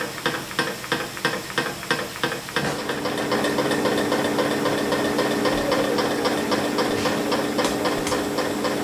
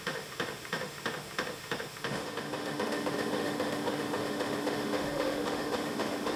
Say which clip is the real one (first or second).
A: first